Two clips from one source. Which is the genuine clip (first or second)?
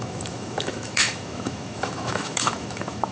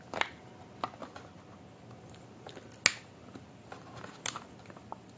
second